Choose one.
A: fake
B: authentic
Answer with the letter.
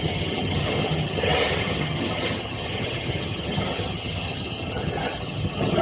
A